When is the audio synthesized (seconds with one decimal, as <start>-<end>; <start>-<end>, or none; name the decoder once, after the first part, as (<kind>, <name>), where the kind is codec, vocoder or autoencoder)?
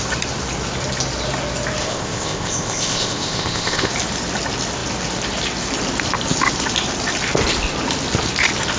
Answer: 1.8-3.9 (codec, ZipCodec)